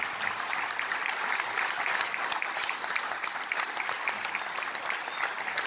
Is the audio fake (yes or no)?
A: no